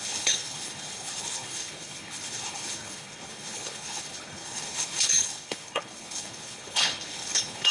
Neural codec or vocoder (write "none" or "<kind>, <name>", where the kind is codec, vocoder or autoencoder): codec, HILCodec